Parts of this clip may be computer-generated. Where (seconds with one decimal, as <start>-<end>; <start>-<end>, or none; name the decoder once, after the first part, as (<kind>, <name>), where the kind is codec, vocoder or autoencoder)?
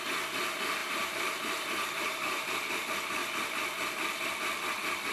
0.8-2.7 (vocoder, BigVGAN v2)